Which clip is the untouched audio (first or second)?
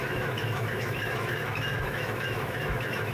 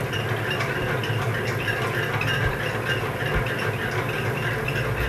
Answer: second